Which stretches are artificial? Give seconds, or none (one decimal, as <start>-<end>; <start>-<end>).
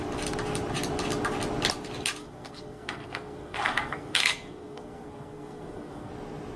2.2-6.1